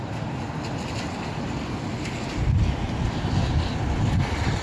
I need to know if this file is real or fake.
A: real